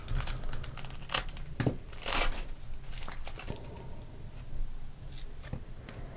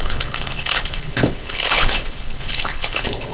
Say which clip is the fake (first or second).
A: second